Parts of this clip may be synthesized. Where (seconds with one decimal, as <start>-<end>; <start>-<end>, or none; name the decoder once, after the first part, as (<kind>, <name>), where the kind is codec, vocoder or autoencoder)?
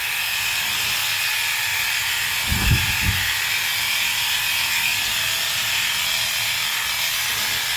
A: 1.7-3.0 (vocoder, BigVGAN v2)